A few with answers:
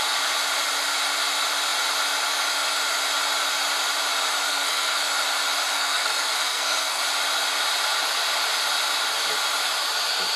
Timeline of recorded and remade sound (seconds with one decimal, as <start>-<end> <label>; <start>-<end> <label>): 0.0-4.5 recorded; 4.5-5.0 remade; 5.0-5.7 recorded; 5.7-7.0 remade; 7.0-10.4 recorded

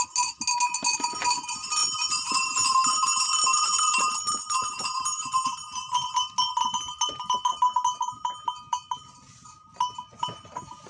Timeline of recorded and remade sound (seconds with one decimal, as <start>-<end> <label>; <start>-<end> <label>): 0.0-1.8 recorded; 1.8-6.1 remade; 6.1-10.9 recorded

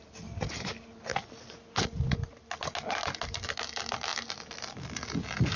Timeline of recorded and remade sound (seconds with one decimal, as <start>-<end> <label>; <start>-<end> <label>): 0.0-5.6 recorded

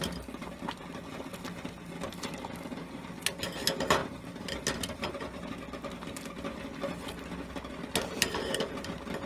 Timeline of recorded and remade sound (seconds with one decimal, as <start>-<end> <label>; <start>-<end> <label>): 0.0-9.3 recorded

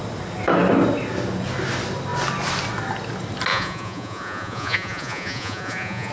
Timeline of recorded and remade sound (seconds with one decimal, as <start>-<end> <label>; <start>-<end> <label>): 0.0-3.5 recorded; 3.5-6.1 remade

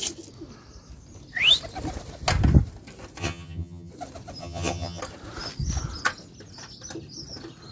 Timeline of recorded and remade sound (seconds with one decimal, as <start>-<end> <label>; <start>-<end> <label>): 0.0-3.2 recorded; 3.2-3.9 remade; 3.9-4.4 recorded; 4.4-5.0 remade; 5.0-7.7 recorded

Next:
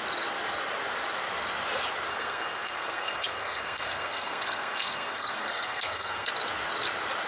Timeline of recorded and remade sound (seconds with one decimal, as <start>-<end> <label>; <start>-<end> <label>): 0.0-2.1 recorded; 2.1-6.3 remade; 6.3-7.3 recorded